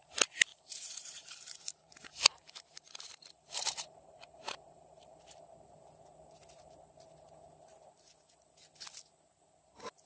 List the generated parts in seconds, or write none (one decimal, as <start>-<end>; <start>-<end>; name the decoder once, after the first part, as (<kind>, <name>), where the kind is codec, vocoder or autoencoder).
0.5-5.2 (vocoder, BigVGAN v2)